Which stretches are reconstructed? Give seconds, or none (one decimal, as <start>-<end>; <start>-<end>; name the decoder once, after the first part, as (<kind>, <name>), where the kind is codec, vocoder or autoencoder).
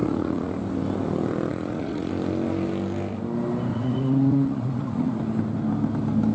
0.0-0.5 (vocoder, Vocos); 1.5-2.1; 3.7-5.1